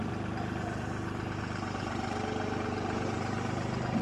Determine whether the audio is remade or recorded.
recorded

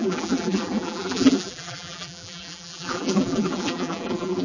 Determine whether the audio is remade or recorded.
remade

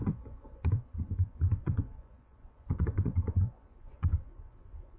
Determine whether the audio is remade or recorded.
remade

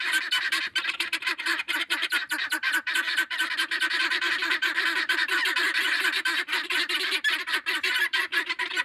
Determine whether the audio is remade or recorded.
remade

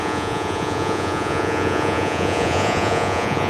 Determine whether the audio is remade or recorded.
remade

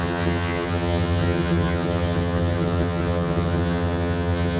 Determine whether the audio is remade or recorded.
remade